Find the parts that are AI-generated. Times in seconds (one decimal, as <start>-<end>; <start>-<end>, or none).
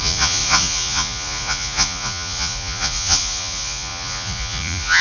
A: 0.0-5.0